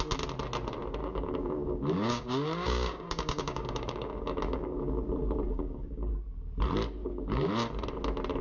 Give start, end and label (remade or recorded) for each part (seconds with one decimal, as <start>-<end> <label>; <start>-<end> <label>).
0.0-1.0 recorded; 1.0-4.8 remade; 4.8-5.5 recorded; 5.5-6.1 remade; 6.1-7.0 recorded; 7.0-7.5 remade; 7.5-8.4 recorded